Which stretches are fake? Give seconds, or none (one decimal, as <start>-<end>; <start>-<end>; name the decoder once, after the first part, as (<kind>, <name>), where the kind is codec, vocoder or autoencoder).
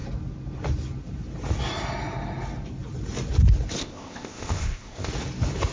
3.8-5.1 (codec, ZipCodec)